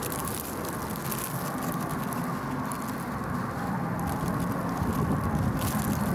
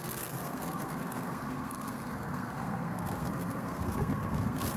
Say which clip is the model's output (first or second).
second